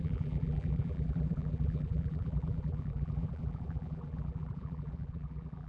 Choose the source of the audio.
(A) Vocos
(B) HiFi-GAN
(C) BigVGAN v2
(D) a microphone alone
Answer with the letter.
C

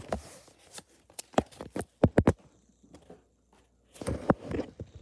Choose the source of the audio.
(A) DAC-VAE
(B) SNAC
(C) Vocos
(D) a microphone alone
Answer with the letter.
D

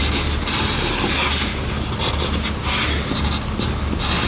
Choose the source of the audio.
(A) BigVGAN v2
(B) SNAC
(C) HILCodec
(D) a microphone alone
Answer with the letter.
D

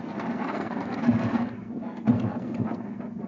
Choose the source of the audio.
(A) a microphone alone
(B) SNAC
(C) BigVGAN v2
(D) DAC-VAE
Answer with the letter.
B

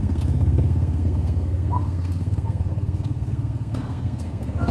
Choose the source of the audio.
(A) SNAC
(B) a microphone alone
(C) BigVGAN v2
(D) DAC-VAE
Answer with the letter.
A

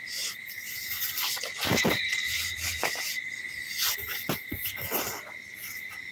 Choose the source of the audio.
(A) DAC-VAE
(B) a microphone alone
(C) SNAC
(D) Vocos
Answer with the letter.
B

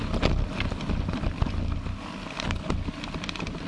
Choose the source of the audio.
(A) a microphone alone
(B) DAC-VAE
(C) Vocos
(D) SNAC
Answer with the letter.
A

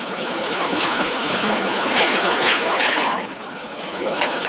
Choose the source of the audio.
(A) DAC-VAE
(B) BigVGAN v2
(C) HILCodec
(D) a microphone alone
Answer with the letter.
C